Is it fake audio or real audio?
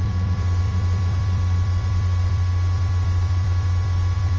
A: fake